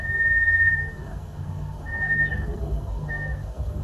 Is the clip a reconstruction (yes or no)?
yes